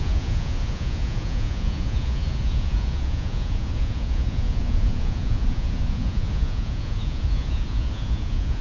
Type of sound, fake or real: fake